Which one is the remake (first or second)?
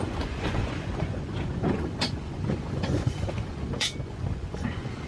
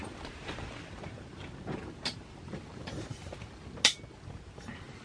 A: first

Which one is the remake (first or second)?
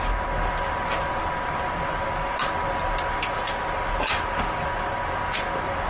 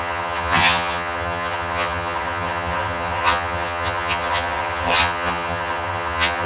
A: second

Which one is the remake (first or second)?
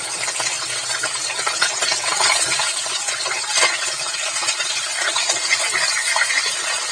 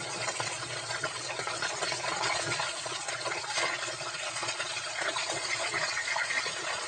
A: second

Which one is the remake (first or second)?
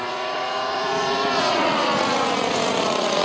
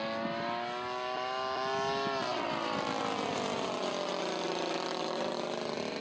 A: first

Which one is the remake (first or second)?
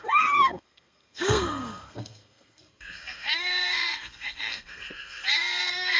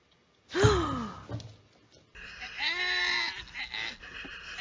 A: first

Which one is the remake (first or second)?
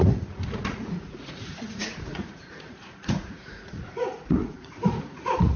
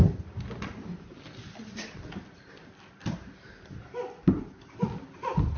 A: first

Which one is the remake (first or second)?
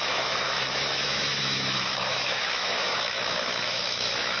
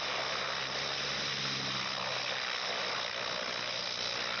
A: first